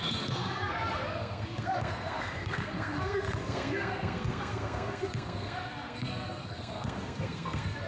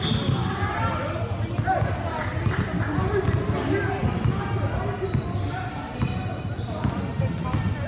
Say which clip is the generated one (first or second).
first